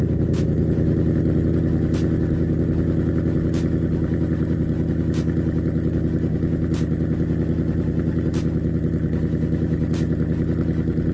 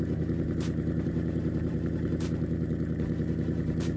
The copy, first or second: second